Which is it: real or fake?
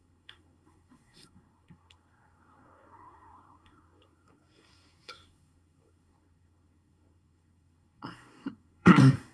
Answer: fake